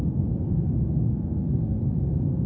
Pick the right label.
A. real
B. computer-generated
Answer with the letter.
B